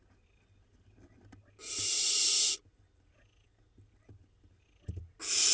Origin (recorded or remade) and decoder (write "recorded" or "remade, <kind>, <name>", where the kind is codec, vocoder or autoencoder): recorded